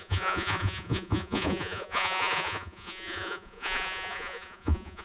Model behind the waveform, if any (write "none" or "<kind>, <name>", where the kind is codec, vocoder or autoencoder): vocoder, Vocos